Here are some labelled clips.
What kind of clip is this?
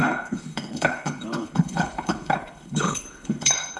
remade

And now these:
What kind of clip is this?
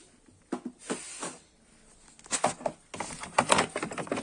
recorded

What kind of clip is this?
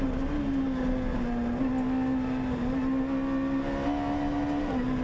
recorded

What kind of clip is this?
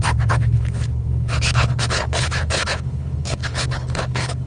remade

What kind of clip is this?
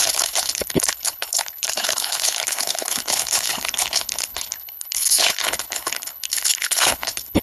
remade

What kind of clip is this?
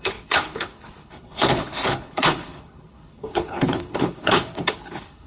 remade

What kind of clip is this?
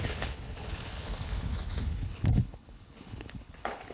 remade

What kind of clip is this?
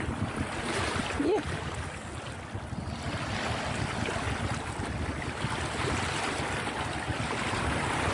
recorded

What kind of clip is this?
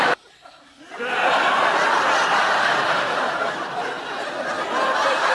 recorded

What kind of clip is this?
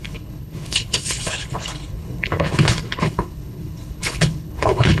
remade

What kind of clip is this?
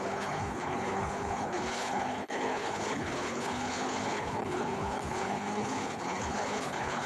remade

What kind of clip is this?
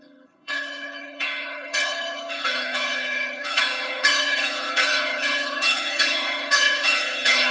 remade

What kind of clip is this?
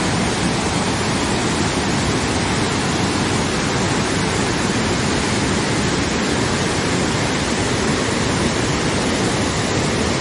recorded